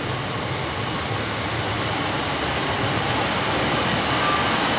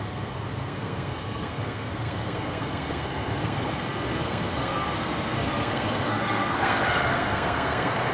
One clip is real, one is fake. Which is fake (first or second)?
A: second